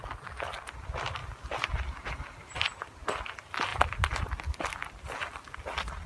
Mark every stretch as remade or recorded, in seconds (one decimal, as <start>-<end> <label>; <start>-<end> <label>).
0.0-1.2 recorded; 1.2-2.1 remade; 2.1-3.7 recorded; 3.7-4.2 remade; 4.2-6.1 recorded